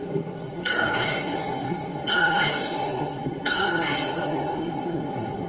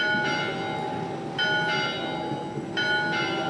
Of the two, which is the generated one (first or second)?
first